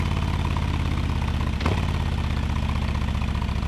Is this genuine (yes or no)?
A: yes